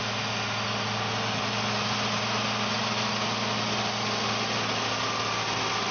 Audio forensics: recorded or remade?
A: recorded